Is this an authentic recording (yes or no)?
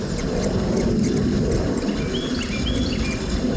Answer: yes